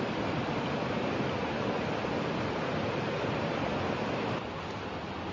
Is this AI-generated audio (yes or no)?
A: no